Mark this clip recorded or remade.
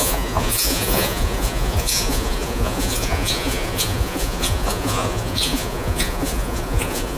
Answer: remade